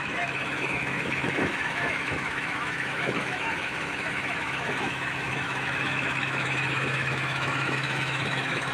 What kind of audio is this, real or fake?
fake